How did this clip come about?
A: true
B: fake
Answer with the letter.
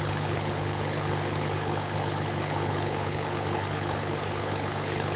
B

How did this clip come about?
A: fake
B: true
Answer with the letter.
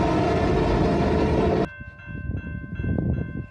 B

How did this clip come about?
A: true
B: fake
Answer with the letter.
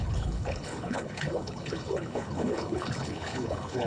B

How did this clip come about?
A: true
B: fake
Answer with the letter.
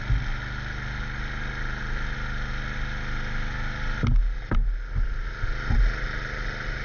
A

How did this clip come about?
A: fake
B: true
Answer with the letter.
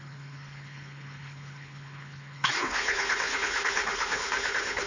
A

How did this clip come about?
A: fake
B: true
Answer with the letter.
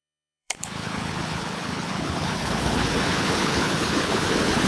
A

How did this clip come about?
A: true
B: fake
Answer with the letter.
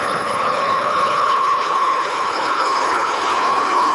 B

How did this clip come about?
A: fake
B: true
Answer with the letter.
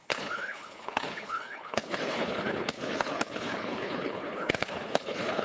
A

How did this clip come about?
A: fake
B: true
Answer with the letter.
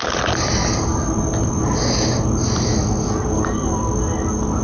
B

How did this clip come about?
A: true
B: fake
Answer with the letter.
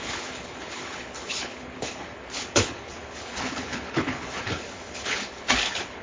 B